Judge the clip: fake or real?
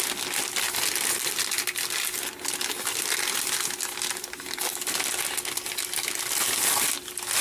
real